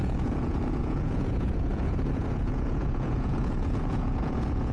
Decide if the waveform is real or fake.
fake